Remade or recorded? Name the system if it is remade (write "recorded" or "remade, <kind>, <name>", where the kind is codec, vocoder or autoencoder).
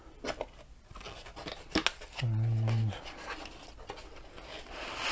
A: recorded